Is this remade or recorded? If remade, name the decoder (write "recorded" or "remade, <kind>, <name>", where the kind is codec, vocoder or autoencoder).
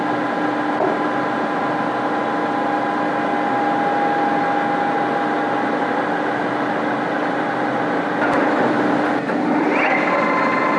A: recorded